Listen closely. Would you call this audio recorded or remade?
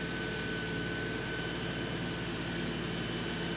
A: recorded